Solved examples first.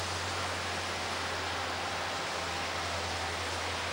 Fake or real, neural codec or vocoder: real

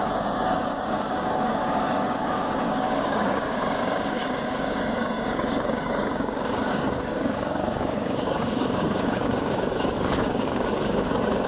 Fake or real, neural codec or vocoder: fake, codec, DAC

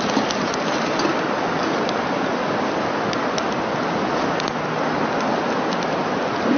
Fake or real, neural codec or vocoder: real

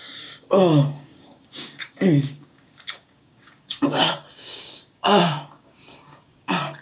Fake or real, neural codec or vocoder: fake, codec, DAC